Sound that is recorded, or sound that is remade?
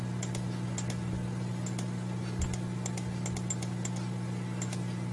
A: recorded